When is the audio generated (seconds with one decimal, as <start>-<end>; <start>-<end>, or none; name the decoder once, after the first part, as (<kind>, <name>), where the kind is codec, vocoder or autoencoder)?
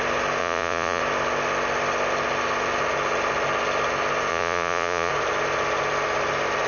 0.4-1.0 (vocoder, Vocos); 4.3-5.1